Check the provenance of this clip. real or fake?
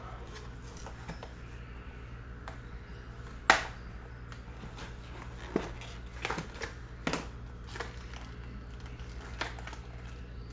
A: real